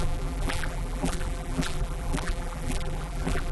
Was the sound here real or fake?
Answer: fake